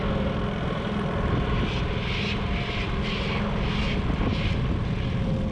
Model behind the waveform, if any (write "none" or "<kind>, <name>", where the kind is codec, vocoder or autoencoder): none